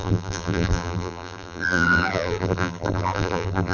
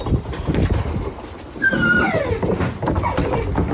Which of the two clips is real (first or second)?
second